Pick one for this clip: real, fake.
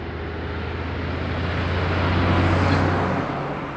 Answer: real